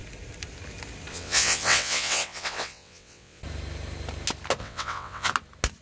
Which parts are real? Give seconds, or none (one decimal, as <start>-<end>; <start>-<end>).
0.0-1.1; 3.4-4.6; 5.3-5.8